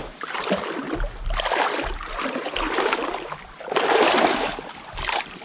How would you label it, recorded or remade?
recorded